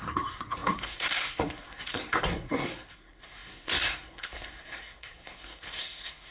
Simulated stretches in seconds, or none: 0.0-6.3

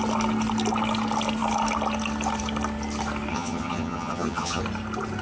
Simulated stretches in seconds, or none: 3.3-4.6

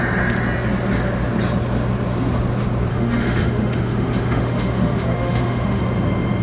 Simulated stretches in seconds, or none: 2.9-5.8